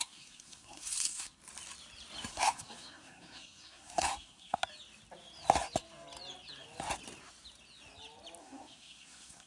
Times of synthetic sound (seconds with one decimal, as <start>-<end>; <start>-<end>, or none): 0.0-1.4; 2.3-4.6; 8.4-9.5